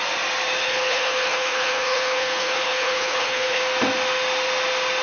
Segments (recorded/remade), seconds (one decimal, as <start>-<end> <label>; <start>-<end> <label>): 0.0-0.6 recorded; 0.6-3.6 remade; 3.6-5.0 recorded